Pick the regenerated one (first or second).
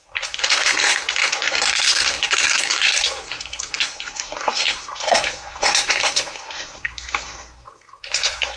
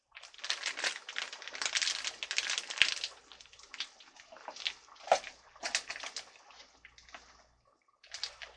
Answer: first